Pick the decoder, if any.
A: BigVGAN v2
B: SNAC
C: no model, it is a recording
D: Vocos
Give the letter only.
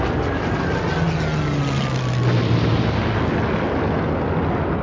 C